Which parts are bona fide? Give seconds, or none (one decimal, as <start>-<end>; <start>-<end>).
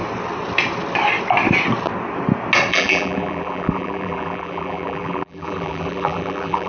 0.0-2.7